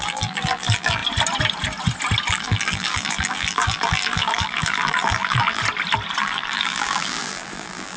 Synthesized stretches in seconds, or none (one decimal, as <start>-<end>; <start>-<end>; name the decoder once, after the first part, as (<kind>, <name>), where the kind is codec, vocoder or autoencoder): 0.0-1.0 (vocoder, BigVGAN v2); 2.3-5.6; 6.2-8.0